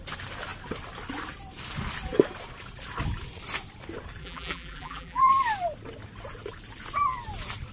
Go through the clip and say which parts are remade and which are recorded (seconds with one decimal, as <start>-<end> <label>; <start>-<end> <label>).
0.0-4.2 recorded; 4.2-5.3 remade; 5.3-7.7 recorded